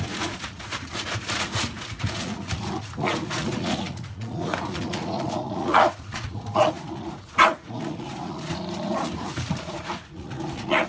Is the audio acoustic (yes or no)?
no